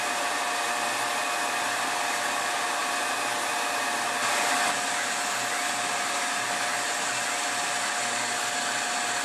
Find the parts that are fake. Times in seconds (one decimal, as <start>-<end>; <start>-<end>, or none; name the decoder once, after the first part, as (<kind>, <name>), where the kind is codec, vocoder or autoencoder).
none